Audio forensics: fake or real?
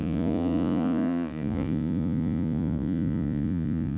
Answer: fake